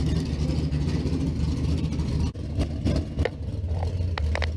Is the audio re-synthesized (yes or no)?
no